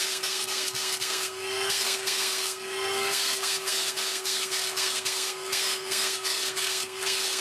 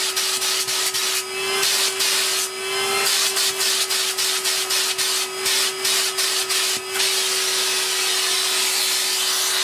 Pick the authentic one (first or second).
second